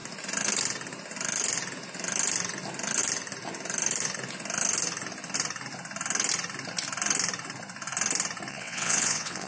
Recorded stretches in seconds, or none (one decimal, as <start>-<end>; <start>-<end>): 0.0-8.5